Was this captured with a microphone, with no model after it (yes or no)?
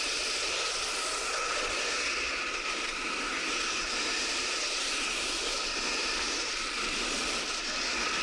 yes